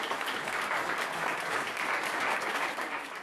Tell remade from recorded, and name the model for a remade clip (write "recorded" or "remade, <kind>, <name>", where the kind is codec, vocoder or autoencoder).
remade, codec, DAC